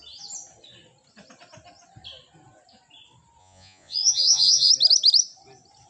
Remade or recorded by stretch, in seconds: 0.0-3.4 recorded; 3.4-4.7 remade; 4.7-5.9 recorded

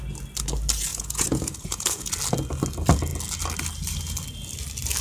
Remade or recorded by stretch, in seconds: 0.0-0.9 recorded; 0.9-2.1 remade; 2.1-5.0 recorded

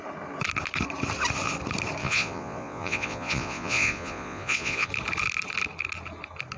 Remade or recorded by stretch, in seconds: 0.0-2.0 recorded; 2.0-4.9 remade; 4.9-6.6 recorded